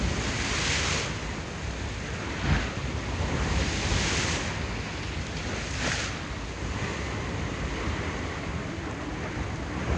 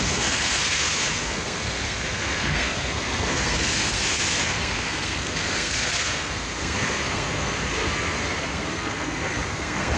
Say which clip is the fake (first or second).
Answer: second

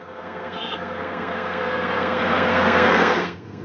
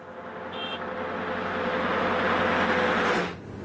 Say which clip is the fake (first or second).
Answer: first